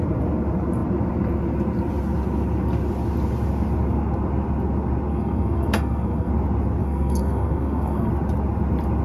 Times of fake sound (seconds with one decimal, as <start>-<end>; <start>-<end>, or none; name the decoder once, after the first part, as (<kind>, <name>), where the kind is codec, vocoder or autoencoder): 5.1-6.3 (codec, SNAC); 6.8-8.1